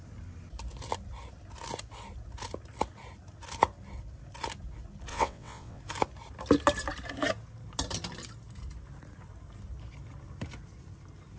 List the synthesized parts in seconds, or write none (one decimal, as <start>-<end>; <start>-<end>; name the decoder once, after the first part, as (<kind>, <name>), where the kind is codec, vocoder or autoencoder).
5.1-5.8 (vocoder, WaveNeXt)